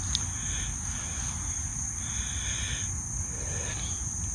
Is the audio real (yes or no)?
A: yes